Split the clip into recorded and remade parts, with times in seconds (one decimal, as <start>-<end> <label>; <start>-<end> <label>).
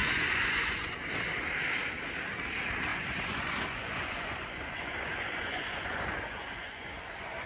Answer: 0.0-1.0 remade; 1.0-2.9 recorded; 2.9-7.5 remade